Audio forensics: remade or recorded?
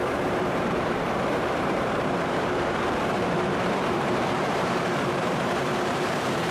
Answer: remade